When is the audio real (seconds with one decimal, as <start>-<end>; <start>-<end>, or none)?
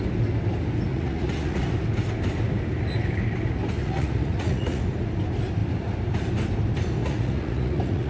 0.0-0.9; 1.6-3.8; 4.8-7.0